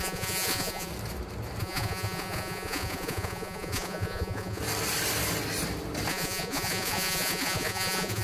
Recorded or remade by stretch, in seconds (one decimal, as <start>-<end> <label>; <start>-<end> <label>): 0.0-0.9 remade; 0.9-1.6 recorded; 1.6-4.6 remade; 4.6-6.1 recorded; 6.1-8.2 remade